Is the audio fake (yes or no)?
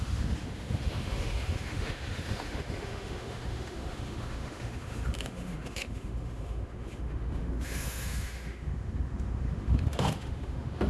yes